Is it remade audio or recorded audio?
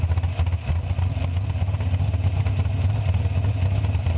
recorded